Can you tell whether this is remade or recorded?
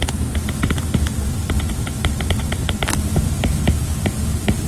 recorded